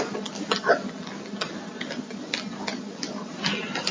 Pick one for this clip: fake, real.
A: real